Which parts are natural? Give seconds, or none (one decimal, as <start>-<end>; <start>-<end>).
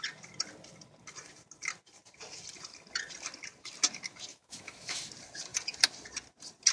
0.0-4.3; 5.1-6.7